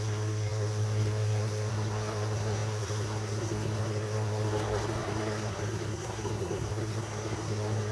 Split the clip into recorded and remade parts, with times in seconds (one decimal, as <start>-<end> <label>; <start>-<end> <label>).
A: 0.0-7.9 remade